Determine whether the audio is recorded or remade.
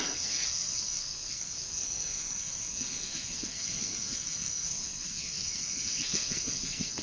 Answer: remade